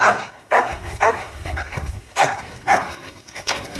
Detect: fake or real fake